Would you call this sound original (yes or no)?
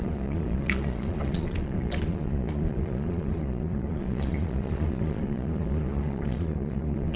no